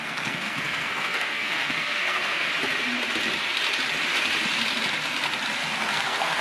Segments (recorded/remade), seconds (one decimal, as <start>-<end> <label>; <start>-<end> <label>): 0.0-2.5 remade; 2.5-5.9 recorded; 5.9-6.4 remade